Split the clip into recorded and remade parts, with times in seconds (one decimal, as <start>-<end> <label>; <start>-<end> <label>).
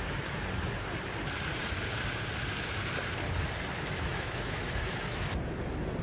0.0-4.1 recorded; 4.1-5.3 remade; 5.3-6.0 recorded